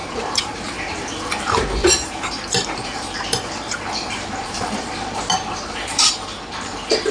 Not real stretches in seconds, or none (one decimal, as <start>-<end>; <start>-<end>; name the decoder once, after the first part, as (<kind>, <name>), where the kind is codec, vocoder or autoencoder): 0.0-1.1 (vocoder, BigVGAN v2); 1.8-6.1